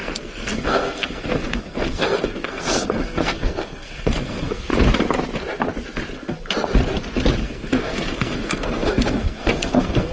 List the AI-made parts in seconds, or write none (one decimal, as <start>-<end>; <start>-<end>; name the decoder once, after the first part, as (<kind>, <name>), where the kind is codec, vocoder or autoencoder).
0.0-4.7 (codec, SNAC); 7.4-10.1